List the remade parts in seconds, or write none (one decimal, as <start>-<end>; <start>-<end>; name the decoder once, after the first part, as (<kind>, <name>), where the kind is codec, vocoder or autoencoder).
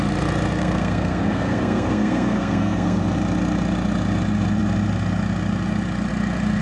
0.6-3.0 (codec, SNAC)